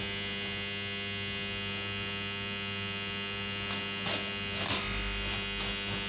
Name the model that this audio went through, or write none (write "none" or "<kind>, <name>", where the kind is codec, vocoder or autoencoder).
none